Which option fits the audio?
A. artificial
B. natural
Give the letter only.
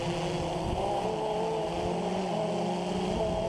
B